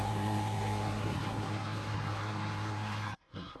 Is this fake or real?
fake